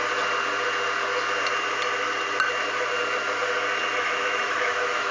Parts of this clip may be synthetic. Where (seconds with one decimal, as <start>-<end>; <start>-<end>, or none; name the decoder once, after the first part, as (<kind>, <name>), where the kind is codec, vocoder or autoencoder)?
4.0-5.1 (autoencoder, DAC-VAE)